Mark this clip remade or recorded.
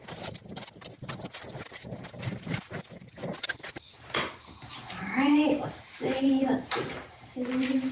remade